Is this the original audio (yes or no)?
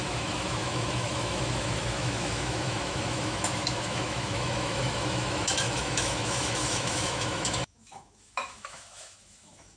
no